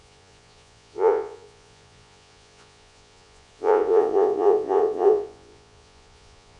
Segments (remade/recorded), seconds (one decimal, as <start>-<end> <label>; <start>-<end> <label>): 0.0-6.6 remade

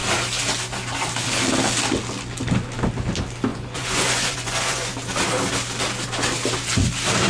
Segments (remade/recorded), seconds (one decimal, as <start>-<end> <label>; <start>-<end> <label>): 0.0-3.5 recorded; 3.5-4.9 remade; 4.9-7.3 recorded